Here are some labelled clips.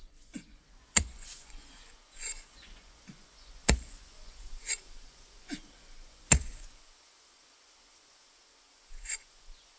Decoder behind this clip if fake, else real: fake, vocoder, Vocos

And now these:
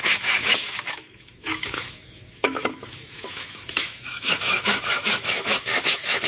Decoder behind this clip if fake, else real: fake, autoencoder, DAC-VAE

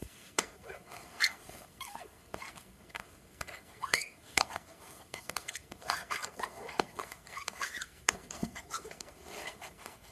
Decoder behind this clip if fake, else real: fake, codec, SNAC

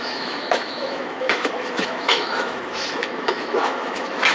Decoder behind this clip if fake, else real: fake, autoencoder, DAC-VAE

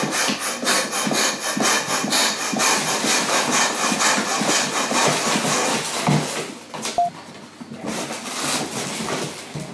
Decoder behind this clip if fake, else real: real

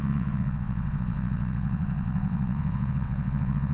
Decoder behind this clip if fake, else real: fake, vocoder, WaveNeXt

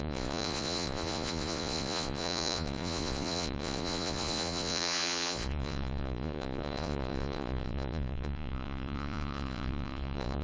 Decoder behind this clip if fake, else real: fake, vocoder, Vocos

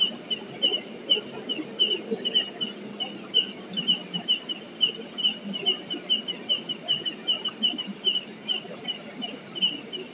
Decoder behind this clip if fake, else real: real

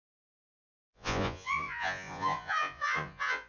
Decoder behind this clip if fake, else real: fake, vocoder, Vocos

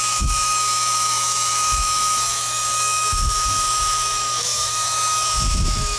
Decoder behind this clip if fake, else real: fake, autoencoder, DAC-VAE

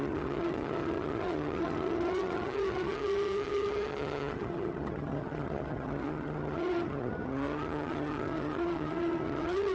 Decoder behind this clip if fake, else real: fake, vocoder, HiFi-GAN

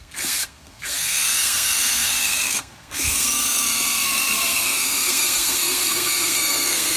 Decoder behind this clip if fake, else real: fake, codec, SNAC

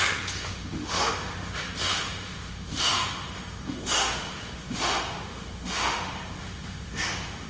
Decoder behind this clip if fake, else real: fake, autoencoder, DAC-VAE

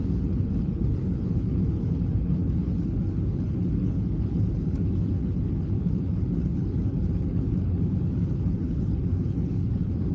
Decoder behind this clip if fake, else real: fake, codec, HILCodec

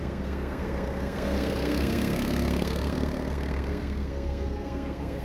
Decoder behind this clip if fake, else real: fake, codec, SNAC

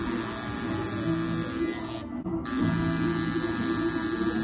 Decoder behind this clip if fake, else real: real